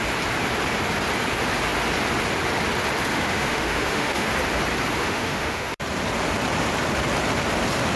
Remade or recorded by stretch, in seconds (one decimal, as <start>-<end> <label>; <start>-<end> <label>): 0.0-3.1 recorded; 3.1-4.3 remade; 4.3-5.0 recorded; 5.0-5.8 remade; 5.8-8.0 recorded